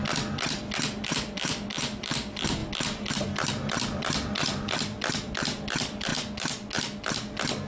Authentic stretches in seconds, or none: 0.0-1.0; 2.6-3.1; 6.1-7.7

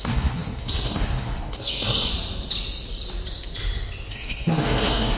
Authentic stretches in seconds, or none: 2.1-4.1

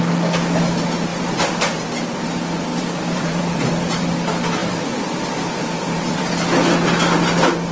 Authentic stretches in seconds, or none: 0.0-1.1; 2.0-2.7; 3.9-4.6; 6.2-7.7

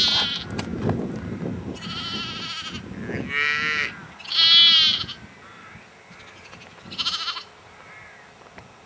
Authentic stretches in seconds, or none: 0.0-8.9